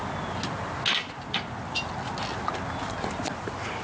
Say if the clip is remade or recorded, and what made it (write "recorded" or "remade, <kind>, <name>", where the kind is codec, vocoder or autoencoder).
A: recorded